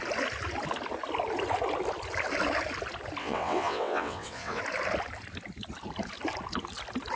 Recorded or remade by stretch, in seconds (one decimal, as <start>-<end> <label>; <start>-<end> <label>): 0.0-3.2 recorded; 3.2-4.6 remade; 4.6-7.2 recorded